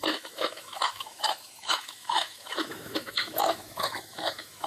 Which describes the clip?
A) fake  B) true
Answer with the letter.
A